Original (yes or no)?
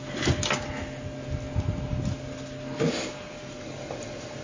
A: yes